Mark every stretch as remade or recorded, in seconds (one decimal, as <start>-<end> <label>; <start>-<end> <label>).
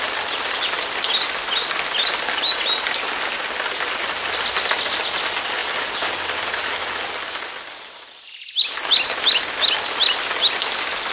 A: 0.0-11.1 recorded